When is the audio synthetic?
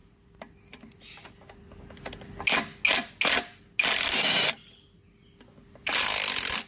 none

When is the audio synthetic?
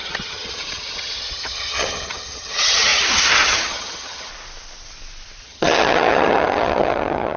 0.0-4.3 (vocoder, HiFi-GAN); 5.4-7.4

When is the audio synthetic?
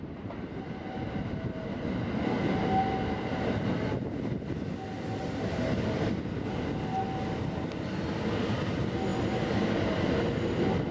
none